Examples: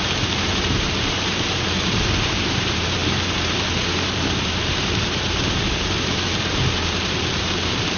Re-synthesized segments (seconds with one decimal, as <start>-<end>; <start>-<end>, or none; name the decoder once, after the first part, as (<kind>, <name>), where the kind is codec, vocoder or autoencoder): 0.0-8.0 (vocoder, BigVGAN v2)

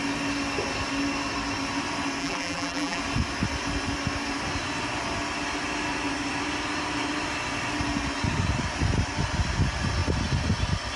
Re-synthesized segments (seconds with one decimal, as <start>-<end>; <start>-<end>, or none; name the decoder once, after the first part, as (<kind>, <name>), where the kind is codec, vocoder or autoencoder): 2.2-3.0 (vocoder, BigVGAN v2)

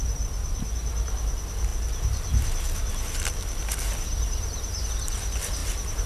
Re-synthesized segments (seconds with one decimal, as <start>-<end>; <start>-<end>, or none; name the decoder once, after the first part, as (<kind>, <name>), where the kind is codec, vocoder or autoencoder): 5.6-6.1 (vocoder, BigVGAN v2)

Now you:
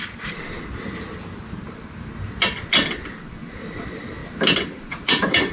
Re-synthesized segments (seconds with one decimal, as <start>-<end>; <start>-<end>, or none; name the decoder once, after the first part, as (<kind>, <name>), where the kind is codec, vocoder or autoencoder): 4.2-5.5 (vocoder, BigVGAN v2)

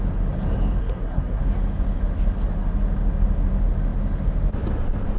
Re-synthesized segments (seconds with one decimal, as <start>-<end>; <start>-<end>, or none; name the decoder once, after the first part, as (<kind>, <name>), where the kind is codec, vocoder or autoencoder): 0.8-1.4 (codec, SNAC)

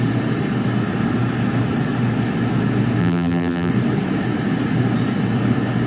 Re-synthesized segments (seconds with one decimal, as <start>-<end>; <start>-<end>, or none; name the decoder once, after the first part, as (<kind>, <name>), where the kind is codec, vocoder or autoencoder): 3.0-3.7 (vocoder, BigVGAN v2)